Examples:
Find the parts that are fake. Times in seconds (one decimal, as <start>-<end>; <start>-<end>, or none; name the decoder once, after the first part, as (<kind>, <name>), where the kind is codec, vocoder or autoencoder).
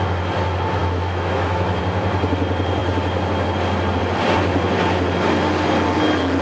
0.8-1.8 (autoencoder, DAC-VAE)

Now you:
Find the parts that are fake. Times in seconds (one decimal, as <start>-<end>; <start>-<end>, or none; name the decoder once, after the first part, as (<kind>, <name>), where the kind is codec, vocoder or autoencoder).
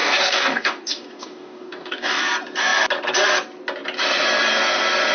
0.0-2.2 (codec, DAC)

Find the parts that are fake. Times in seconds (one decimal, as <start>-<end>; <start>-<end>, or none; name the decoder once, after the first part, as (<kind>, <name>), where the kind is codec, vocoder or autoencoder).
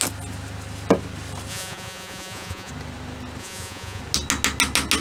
1.5-2.7 (vocoder, Vocos); 3.4-4.0